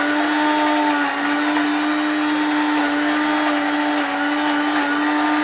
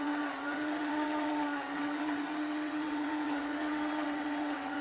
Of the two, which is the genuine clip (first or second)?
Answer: first